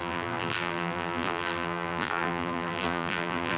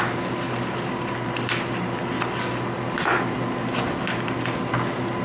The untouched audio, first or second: second